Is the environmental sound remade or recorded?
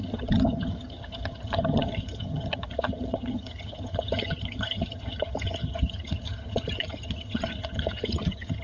remade